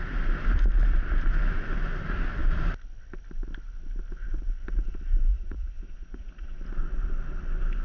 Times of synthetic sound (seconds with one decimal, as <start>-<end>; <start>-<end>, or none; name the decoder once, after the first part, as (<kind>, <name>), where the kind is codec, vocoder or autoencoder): 5.3-6.6 (vocoder, Vocos)